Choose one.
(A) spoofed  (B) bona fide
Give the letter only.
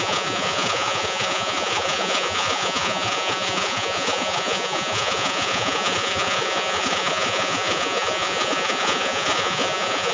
A